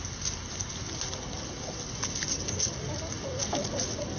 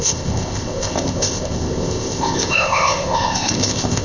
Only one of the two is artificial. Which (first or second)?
second